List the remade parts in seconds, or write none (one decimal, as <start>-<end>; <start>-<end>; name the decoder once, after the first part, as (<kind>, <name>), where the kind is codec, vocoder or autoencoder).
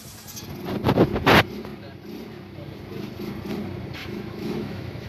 4.0-5.1 (autoencoder, DAC-VAE)